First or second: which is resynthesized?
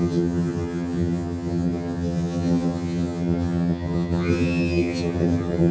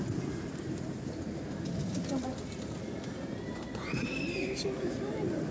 first